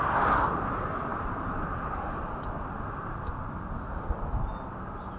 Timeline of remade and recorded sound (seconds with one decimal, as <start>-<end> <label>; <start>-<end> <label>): 0.0-5.2 recorded